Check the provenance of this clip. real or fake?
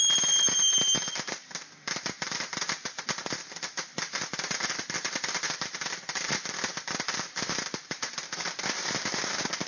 real